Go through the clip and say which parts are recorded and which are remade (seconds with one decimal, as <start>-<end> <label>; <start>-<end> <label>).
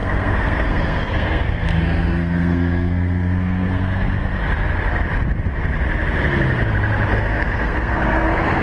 0.0-4.4 remade; 4.4-7.1 recorded; 7.1-8.6 remade